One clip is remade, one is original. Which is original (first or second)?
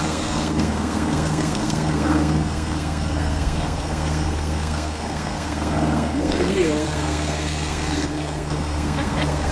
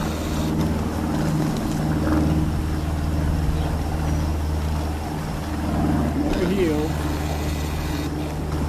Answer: second